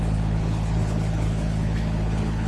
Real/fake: fake